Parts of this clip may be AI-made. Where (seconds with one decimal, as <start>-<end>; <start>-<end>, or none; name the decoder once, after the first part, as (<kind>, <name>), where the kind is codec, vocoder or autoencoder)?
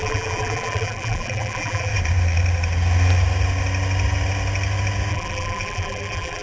0.0-1.9 (vocoder, BigVGAN v2); 5.1-6.4